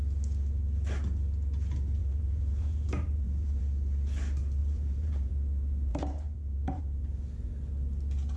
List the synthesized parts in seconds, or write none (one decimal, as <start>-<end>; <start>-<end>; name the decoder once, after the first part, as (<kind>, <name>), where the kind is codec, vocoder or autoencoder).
2.0-3.6 (vocoder, BigVGAN v2); 4.6-5.3; 5.9-6.8